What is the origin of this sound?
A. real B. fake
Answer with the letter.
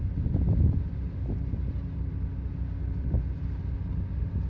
A